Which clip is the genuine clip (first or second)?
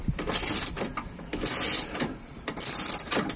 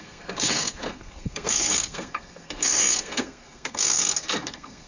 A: first